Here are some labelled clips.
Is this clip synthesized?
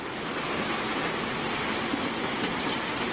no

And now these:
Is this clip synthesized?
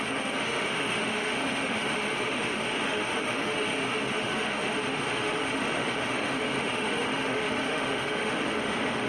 yes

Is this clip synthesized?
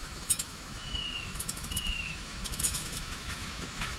yes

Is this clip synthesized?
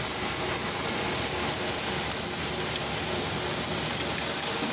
no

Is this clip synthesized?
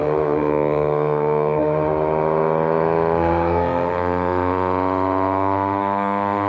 yes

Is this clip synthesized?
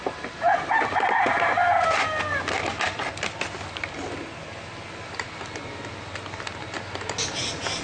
no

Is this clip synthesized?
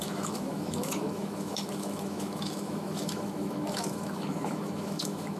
yes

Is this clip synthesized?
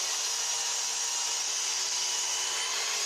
no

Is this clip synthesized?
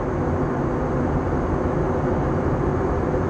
no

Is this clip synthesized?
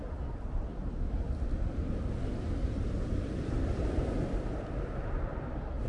no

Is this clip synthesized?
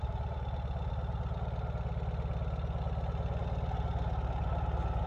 no